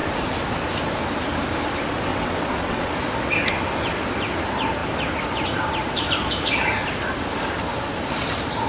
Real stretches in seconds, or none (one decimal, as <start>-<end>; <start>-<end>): 0.0-2.1; 2.9-8.7